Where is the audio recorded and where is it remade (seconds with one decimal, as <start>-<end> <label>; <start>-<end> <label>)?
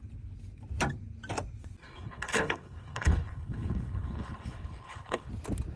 0.0-1.8 recorded; 1.8-5.3 remade; 5.3-5.8 recorded